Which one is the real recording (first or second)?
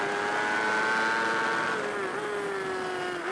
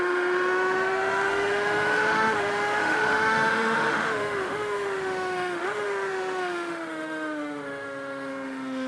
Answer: first